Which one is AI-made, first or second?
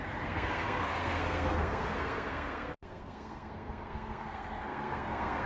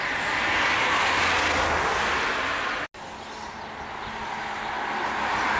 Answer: first